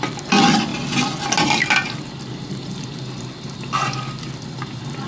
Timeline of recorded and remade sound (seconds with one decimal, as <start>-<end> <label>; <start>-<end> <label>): 0.0-5.1 recorded